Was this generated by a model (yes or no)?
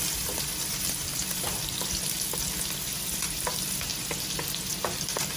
yes